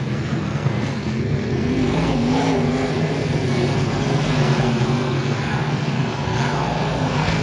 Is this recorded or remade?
remade